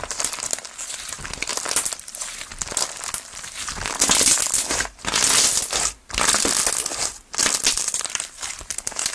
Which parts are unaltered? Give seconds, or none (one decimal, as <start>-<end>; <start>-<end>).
0.0-1.5; 2.1-7.4; 8.3-9.1